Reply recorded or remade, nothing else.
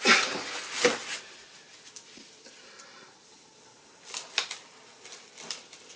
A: recorded